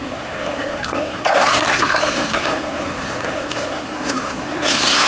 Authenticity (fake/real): fake